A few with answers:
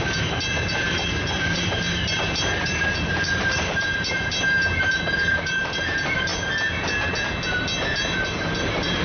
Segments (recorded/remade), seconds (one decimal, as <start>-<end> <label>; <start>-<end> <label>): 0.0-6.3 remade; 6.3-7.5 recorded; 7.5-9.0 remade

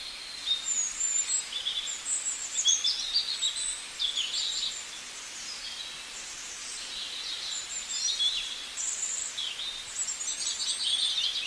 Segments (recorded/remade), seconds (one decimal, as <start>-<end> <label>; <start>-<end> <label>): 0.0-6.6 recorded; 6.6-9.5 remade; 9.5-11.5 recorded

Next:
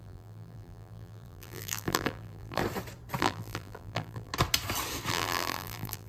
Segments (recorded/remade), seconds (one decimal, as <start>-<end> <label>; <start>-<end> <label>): 0.0-2.6 remade; 2.6-3.2 recorded; 3.2-4.3 remade; 4.3-5.1 recorded; 5.1-6.1 remade

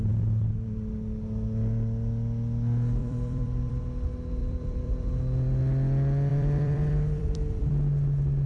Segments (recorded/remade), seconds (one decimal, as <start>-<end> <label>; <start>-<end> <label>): 0.0-3.0 recorded; 3.0-3.8 remade; 3.8-4.4 recorded; 4.4-5.6 remade; 5.6-6.3 recorded; 6.3-7.7 remade; 7.7-8.5 recorded

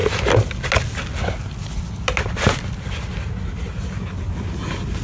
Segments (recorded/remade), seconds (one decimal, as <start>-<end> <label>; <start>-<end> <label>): 0.0-5.0 recorded